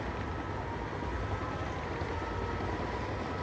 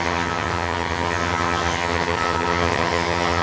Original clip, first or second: first